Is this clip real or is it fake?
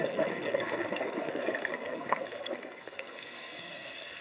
fake